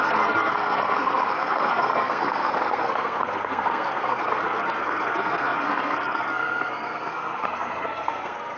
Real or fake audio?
fake